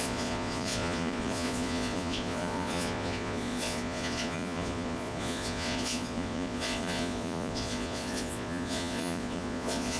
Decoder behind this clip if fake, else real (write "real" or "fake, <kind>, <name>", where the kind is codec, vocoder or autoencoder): fake, vocoder, Vocos